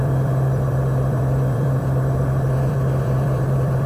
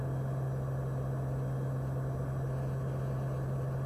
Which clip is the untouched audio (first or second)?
second